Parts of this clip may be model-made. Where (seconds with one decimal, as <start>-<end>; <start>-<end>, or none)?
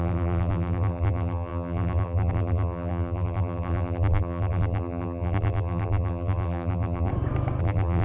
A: 0.0-7.1; 7.6-8.0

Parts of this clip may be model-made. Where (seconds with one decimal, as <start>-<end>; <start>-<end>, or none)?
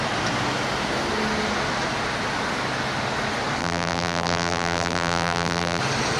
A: 3.6-5.8